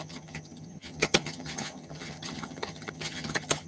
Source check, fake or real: fake